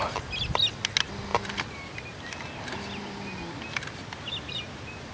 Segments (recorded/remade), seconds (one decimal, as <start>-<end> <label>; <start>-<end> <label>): 0.0-5.1 recorded